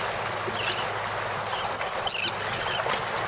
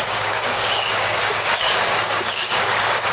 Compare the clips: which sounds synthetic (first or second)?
second